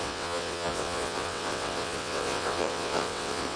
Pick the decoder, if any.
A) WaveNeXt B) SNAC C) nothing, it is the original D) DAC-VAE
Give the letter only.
A